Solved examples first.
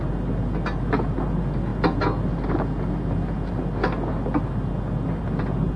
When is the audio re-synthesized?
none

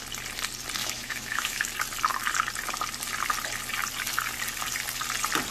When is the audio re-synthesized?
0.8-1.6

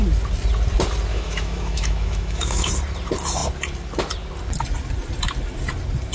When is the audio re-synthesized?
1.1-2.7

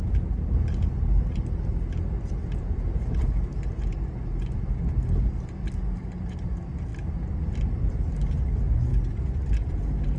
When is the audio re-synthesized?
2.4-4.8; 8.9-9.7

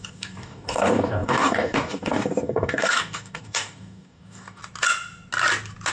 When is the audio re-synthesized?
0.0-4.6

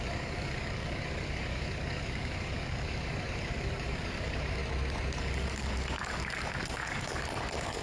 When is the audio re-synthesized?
0.0-4.6; 5.2-7.8